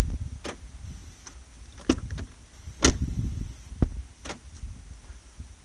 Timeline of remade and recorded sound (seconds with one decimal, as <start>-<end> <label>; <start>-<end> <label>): 0.0-5.6 recorded